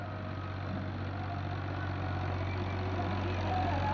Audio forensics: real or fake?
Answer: real